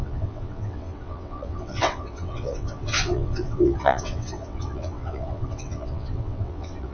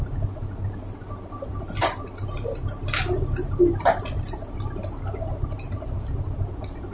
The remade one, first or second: first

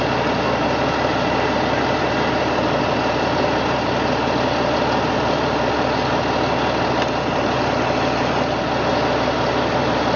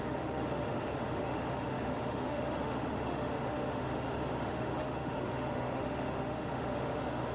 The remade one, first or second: second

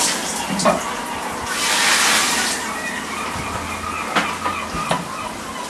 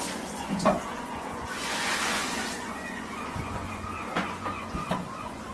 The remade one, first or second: second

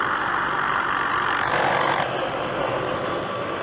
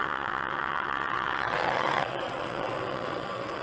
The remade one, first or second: second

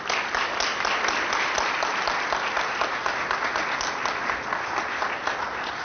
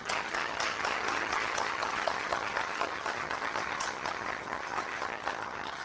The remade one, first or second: second